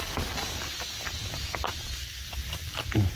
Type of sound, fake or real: real